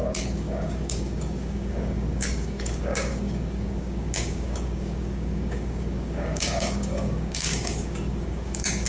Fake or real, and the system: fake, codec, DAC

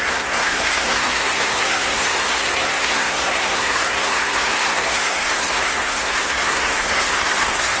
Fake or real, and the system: fake, codec, SNAC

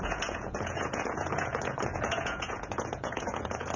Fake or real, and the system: fake, vocoder, Vocos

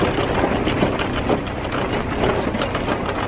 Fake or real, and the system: real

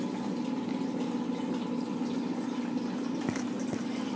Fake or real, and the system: real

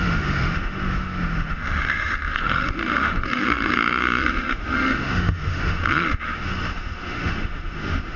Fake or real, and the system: fake, autoencoder, DAC-VAE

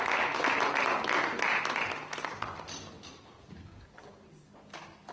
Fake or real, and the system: real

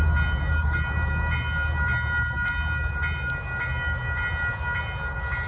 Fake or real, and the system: real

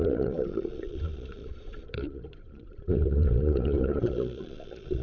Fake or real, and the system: fake, vocoder, Vocos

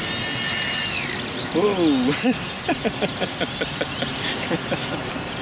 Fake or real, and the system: real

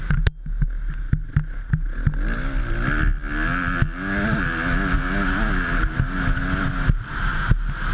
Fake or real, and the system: real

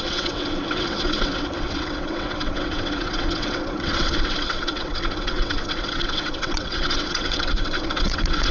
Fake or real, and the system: fake, vocoder, WaveNeXt